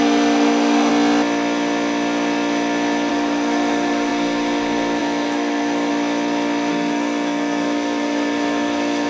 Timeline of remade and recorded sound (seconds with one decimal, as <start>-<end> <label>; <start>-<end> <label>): 0.0-0.9 remade; 0.9-3.1 recorded; 3.1-5.9 remade; 5.9-6.7 recorded; 6.7-9.1 remade